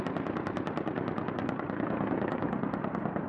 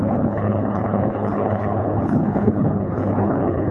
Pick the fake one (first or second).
second